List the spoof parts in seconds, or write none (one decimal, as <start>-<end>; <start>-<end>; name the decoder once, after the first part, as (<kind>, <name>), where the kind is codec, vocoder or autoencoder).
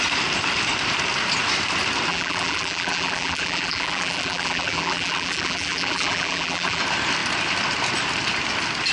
2.1-6.8 (vocoder, BigVGAN v2)